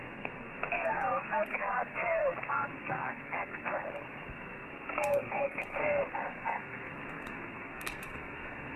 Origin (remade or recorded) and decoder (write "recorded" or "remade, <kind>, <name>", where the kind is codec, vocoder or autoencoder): remade, codec, SNAC